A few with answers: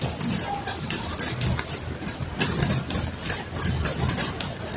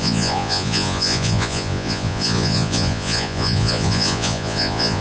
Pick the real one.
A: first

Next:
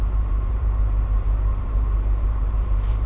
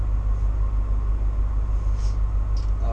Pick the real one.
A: second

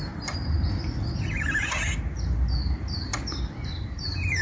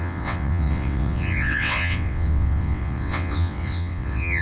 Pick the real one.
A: first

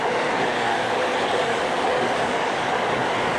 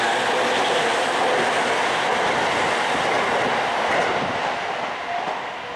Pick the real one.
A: second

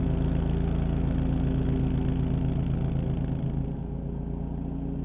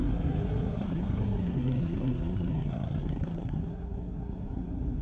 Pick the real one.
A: first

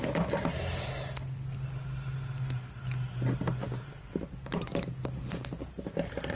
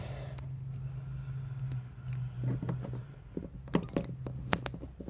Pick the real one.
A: second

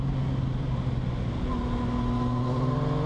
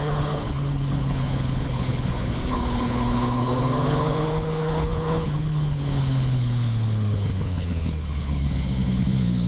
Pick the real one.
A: first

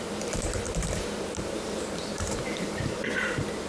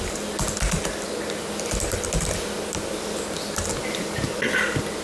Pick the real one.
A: second